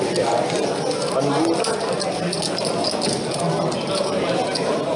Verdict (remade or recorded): recorded